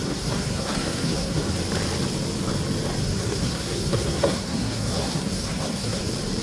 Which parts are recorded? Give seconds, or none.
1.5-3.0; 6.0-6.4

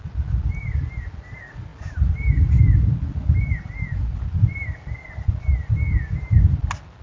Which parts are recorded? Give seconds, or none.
0.0-7.0

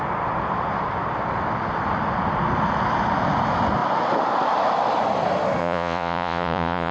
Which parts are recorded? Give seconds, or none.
0.0-5.6

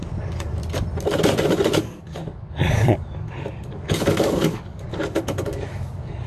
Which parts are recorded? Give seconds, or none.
0.6-1.7

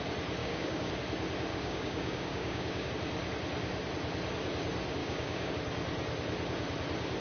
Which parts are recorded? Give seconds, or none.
0.0-0.4; 0.9-1.5; 2.9-5.0; 5.5-7.2

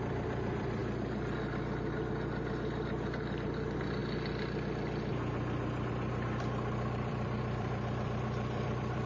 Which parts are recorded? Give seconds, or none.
4.0-5.9

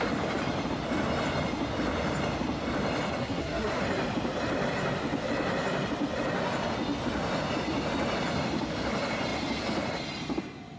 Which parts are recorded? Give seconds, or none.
0.0-3.2; 3.8-10.8